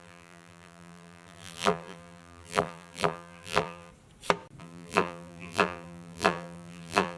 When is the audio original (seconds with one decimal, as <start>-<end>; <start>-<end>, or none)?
3.9-4.6